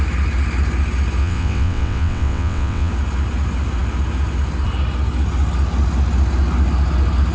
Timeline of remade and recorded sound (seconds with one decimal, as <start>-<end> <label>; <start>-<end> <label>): 0.0-1.2 recorded; 1.2-2.9 remade; 2.9-7.3 recorded